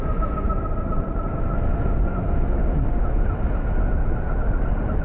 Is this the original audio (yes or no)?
yes